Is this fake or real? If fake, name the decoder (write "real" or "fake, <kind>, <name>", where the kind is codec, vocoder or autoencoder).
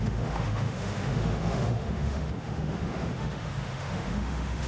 fake, autoencoder, DAC-VAE